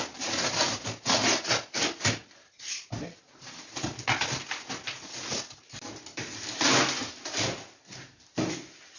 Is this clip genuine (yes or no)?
yes